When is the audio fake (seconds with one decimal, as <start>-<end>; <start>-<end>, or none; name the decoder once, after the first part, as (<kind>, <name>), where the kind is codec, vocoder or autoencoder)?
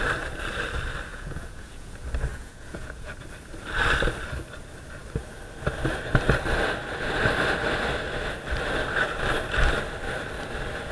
1.1-1.9 (vocoder, Vocos); 2.3-3.1